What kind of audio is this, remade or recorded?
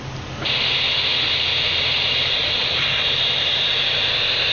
recorded